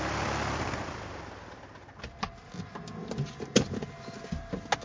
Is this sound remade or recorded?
recorded